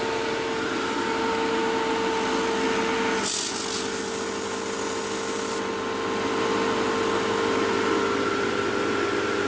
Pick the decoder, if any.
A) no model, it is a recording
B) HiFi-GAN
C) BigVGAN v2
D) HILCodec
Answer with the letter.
A